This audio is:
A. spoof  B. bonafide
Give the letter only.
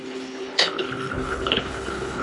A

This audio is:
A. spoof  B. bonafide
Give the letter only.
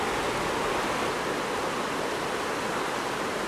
B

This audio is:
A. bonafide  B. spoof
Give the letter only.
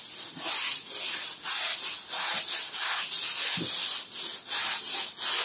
A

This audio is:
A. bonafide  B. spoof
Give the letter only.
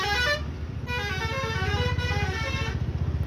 A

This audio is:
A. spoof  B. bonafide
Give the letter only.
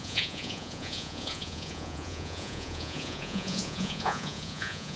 A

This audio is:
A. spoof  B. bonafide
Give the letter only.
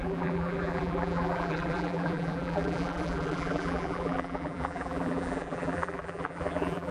A